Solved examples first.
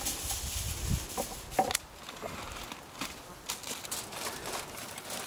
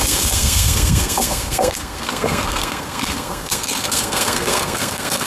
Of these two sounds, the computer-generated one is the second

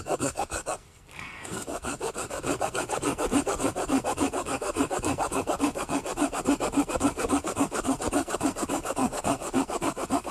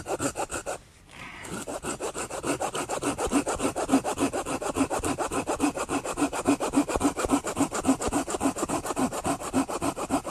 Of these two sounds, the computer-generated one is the first